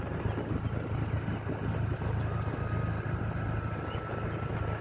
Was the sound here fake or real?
real